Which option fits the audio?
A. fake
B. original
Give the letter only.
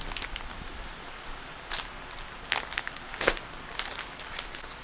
B